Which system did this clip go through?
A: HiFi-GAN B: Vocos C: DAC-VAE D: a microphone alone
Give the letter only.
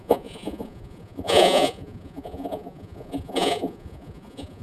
B